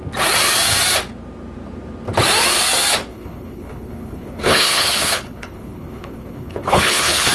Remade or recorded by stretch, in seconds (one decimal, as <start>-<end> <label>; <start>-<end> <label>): 0.0-3.1 recorded; 3.1-7.3 remade